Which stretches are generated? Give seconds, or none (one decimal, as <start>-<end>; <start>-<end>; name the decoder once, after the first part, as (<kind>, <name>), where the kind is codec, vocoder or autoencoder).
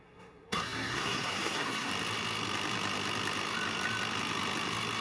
0.0-1.9 (codec, SNAC)